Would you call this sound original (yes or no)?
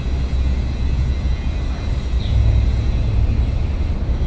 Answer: yes